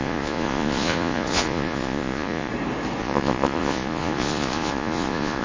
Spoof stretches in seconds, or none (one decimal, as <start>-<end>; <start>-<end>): 0.0-2.5; 3.0-5.4